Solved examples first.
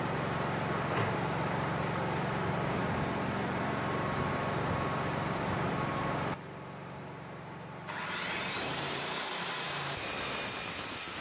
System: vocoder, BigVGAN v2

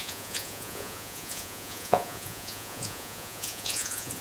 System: vocoder, Vocos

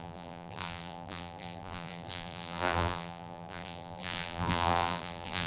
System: vocoder, BigVGAN v2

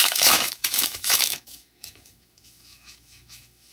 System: autoencoder, DAC-VAE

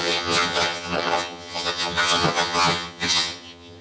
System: vocoder, HiFi-GAN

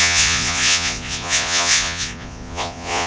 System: vocoder, Vocos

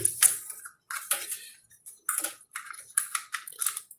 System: vocoder, BigVGAN v2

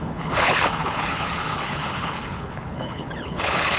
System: codec, HILCodec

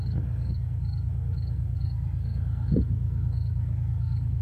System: codec, SNAC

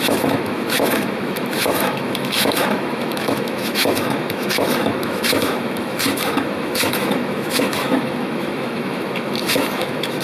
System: autoencoder, DAC-VAE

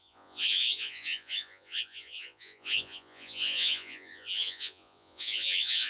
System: vocoder, Vocos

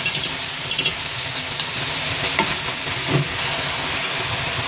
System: none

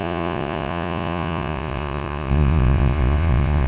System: vocoder, Vocos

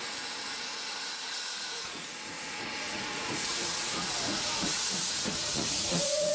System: vocoder, Vocos